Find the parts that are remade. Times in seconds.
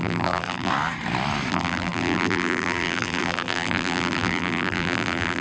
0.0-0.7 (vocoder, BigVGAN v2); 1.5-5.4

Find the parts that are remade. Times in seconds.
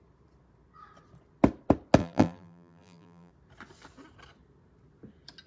2.0-3.3 (vocoder, BigVGAN v2)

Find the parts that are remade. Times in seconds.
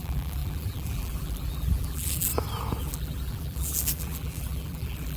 0.0-2.3 (vocoder, BigVGAN v2); 2.8-5.2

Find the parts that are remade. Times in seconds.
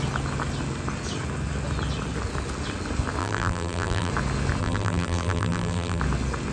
3.2-4.1 (vocoder, BigVGAN v2); 4.6-6.0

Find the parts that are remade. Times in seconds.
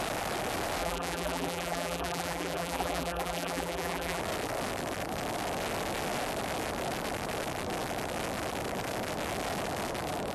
0.8-4.2 (vocoder, BigVGAN v2)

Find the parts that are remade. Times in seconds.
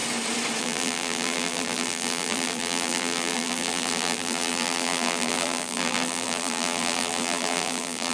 0.6-8.1 (vocoder, BigVGAN v2)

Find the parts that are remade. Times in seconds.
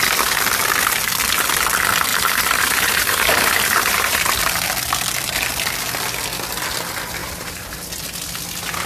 2.1-4.3 (vocoder, BigVGAN v2); 7.2-7.8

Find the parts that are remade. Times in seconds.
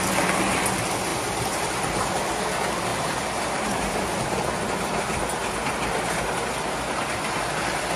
1.1-2.1 (vocoder, BigVGAN v2); 2.9-5.2